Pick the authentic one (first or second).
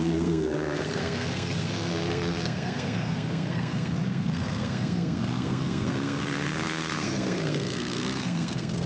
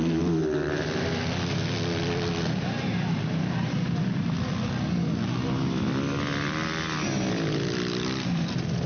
second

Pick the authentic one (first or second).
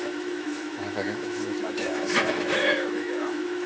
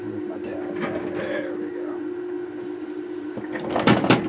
second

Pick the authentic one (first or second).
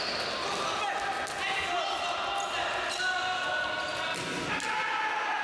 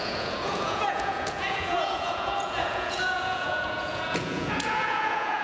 first